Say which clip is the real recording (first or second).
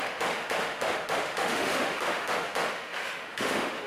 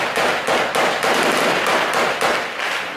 second